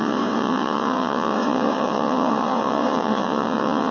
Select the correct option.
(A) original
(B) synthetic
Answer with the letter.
B